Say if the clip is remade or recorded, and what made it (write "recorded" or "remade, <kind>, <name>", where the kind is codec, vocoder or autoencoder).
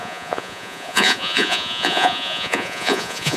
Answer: remade, vocoder, Vocos